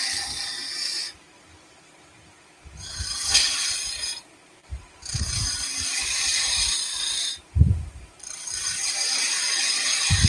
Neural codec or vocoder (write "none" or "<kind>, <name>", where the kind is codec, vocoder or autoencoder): vocoder, BigVGAN v2